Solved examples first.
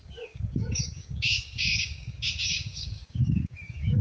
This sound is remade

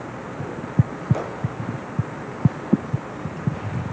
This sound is recorded